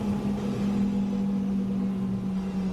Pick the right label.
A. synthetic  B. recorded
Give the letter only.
B